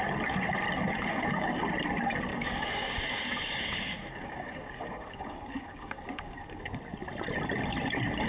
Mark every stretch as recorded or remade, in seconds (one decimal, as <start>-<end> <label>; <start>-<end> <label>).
0.0-1.1 recorded; 1.1-1.6 remade; 1.6-2.3 recorded; 2.3-6.6 remade; 6.6-8.3 recorded